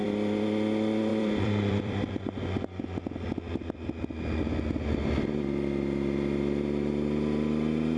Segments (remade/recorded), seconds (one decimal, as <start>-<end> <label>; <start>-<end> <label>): 0.0-1.1 recorded; 1.1-2.3 remade; 2.3-8.0 recorded